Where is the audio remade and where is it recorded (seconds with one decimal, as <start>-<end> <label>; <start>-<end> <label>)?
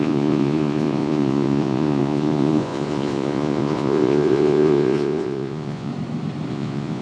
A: 0.0-5.9 remade; 5.9-6.5 recorded; 6.5-7.0 remade